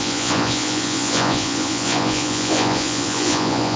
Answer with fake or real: fake